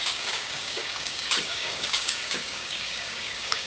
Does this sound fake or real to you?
fake